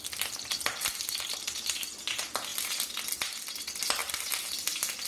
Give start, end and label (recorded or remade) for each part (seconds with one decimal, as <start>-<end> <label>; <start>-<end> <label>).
0.0-5.1 recorded